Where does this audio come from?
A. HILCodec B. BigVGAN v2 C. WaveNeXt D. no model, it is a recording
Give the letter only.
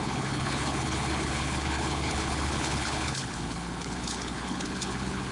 A